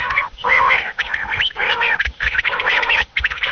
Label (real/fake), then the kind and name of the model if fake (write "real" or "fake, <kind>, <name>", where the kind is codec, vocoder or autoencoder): fake, autoencoder, DAC-VAE